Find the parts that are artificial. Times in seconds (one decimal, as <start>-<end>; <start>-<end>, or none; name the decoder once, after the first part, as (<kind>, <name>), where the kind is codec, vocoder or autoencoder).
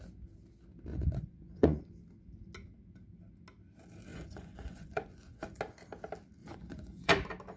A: 0.9-1.8 (vocoder, Vocos); 4.1-5.6; 6.4-7.1